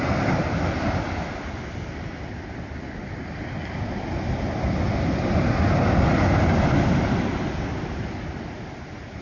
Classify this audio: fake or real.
real